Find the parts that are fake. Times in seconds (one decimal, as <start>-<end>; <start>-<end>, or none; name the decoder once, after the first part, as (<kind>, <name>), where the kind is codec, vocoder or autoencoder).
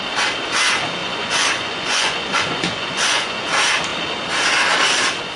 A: 1.0-3.5 (vocoder, Vocos)